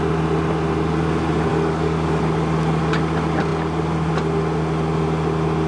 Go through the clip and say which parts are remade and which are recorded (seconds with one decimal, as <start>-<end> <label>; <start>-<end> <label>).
0.0-1.5 recorded; 1.5-2.2 remade; 2.2-5.7 recorded